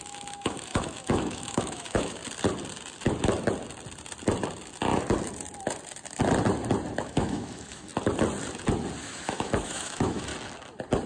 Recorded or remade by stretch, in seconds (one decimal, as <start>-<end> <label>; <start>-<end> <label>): 0.0-2.2 remade; 2.2-7.0 recorded; 7.0-7.9 remade; 7.9-9.0 recorded; 9.0-10.3 remade; 10.3-11.1 recorded